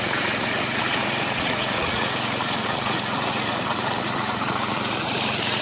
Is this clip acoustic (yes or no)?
no